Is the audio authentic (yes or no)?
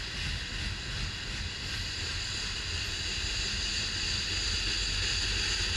yes